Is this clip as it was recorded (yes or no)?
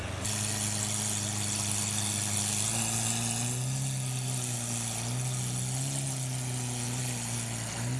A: yes